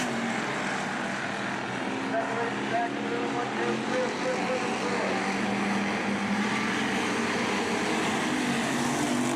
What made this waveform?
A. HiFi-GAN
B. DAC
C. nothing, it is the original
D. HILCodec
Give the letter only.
C